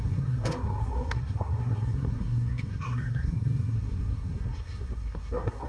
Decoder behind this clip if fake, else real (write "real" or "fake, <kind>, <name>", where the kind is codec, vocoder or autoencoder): fake, codec, SNAC